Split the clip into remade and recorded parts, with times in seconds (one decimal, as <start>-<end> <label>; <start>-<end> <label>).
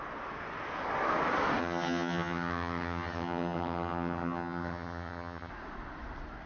0.0-1.6 recorded; 1.6-5.5 remade; 5.5-6.5 recorded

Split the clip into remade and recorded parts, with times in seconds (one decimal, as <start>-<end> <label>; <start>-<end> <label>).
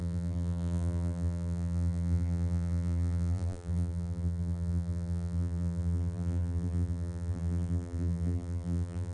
0.0-9.1 remade